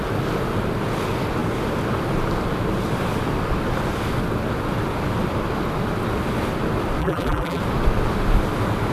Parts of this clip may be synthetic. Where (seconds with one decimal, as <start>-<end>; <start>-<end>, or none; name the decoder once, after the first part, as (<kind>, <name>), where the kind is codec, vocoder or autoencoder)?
7.0-7.6 (vocoder, BigVGAN v2)